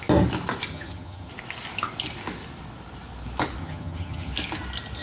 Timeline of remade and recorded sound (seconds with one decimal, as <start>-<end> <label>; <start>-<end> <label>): 0.0-0.7 recorded; 0.7-1.3 remade; 1.3-3.6 recorded; 3.6-4.3 remade; 4.3-5.0 recorded